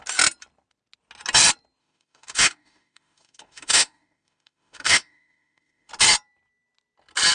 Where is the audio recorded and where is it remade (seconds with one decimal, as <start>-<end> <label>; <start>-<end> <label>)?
0.0-1.8 recorded; 1.8-5.9 remade; 5.9-7.3 recorded